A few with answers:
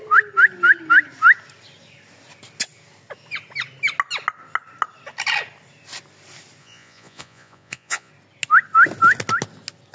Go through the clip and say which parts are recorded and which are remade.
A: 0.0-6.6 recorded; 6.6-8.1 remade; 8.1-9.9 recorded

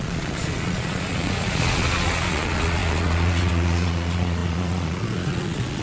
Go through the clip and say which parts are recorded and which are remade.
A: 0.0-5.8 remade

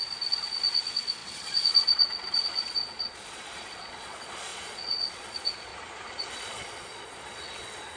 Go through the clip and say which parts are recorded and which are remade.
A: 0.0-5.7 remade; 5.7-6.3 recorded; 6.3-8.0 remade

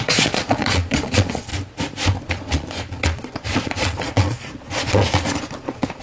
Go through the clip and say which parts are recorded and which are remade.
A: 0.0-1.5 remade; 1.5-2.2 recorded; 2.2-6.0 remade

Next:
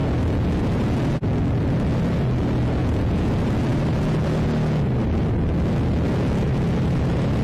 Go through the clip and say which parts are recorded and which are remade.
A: 0.0-2.8 recorded; 2.8-3.3 remade; 3.3-7.4 recorded

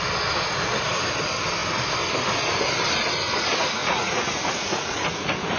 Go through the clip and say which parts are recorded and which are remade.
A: 0.0-3.8 recorded; 3.8-5.6 remade